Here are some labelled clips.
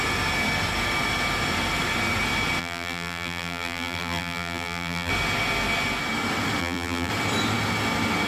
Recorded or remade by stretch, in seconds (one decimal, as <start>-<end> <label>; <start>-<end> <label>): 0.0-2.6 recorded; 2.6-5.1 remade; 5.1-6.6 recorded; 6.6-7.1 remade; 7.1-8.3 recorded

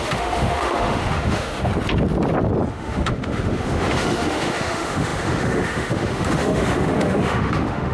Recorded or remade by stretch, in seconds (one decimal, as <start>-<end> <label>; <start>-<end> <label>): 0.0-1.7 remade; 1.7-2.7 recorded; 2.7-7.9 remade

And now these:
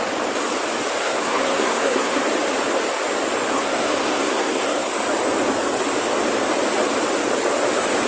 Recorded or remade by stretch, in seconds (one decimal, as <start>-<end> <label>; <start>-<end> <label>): 0.0-1.0 recorded; 1.0-2.2 remade; 2.2-3.5 recorded; 3.5-4.9 remade; 4.9-8.1 recorded

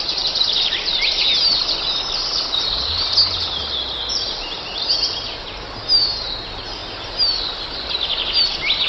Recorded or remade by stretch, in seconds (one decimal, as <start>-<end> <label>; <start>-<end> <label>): 0.0-8.9 recorded

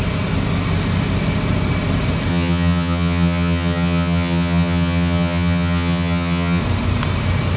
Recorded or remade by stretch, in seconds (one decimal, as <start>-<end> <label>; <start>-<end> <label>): 0.0-2.3 recorded; 2.3-6.6 remade; 6.6-7.6 recorded